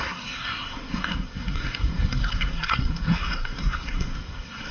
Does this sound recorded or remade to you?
remade